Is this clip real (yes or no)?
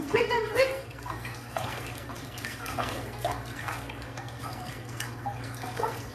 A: no